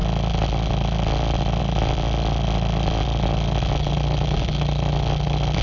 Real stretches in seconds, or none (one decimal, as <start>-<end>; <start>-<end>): 0.0-5.6